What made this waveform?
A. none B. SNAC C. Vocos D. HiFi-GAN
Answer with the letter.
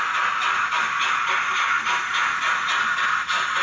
A